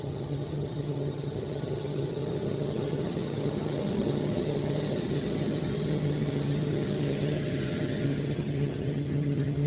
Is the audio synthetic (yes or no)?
yes